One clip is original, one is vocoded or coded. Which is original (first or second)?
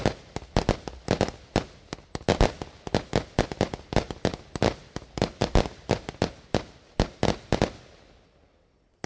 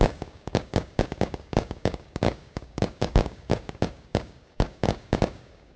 first